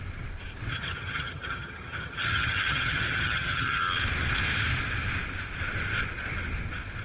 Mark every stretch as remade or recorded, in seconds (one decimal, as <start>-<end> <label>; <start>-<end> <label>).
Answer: 0.0-0.7 recorded; 0.7-3.8 remade; 3.8-7.0 recorded